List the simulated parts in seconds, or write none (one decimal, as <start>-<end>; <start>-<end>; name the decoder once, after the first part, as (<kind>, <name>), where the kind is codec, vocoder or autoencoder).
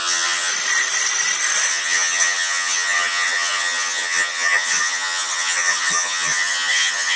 0.0-0.5 (vocoder, HiFi-GAN); 1.7-7.2